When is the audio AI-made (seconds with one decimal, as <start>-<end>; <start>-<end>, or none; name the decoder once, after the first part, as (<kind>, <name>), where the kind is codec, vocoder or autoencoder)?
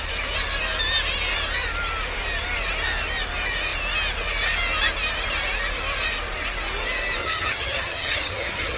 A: 7.2-8.8 (vocoder, HiFi-GAN)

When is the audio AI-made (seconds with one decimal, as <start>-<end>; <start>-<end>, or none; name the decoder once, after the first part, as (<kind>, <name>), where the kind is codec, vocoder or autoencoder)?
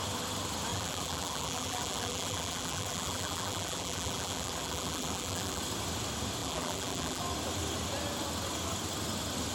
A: 0.7-5.6 (vocoder, BigVGAN v2); 6.4-7.2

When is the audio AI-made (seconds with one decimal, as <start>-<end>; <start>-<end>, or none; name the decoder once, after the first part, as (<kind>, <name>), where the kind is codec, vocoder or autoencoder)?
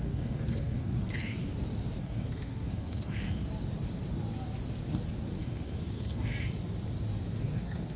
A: 0.0-1.4 (codec, SNAC); 2.0-3.4; 5.4-6.3; 7.4-8.0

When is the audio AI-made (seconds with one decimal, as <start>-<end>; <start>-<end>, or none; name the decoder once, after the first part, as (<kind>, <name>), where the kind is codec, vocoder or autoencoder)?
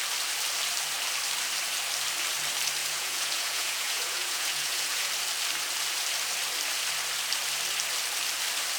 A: 2.8-5.1 (vocoder, Vocos)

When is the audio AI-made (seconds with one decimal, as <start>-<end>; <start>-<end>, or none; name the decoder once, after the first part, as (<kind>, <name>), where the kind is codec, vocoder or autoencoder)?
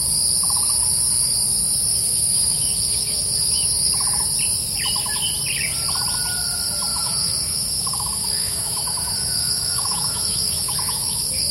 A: 1.9-3.9 (autoencoder, DAC-VAE); 6.9-11.5